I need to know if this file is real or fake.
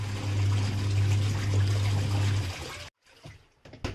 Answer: real